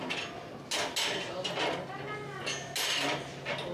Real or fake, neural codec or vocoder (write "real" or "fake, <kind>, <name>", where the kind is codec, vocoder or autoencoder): real